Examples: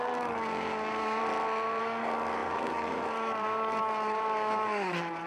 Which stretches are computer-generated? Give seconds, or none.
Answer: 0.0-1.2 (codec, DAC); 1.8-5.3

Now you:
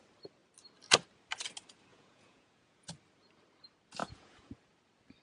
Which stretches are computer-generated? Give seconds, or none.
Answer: 1.9-2.9 (vocoder, Vocos); 4.0-4.5

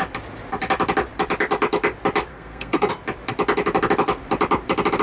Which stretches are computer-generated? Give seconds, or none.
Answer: 2.3-2.9 (codec, SNAC)

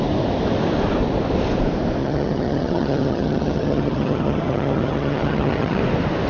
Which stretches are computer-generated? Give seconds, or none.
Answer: 2.0-5.8 (vocoder, HiFi-GAN)

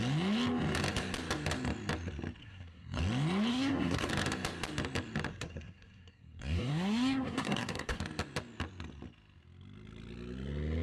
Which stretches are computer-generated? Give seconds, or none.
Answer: 2.4-3.0 (codec, SNAC); 3.5-4.1; 5.3-8.0

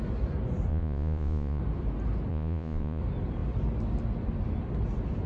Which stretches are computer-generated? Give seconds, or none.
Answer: 0.7-1.6 (vocoder, Vocos); 2.3-3.0

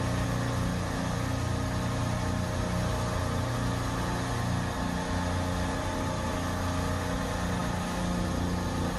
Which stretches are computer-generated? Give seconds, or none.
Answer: none